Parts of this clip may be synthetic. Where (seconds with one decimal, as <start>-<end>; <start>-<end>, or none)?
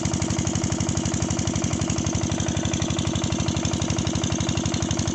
none